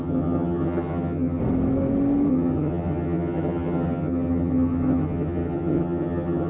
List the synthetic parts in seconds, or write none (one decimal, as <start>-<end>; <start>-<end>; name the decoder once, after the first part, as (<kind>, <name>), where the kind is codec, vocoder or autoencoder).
0.0-1.4 (vocoder, HiFi-GAN); 2.3-6.5